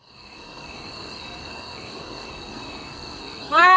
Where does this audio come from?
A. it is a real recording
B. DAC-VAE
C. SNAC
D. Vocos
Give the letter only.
C